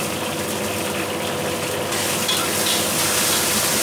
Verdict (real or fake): real